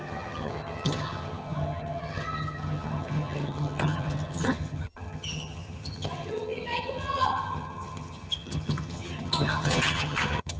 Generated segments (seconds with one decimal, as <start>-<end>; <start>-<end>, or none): 0.0-10.6